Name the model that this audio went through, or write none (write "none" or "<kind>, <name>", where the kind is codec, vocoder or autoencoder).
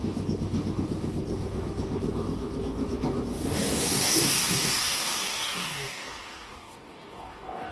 codec, DAC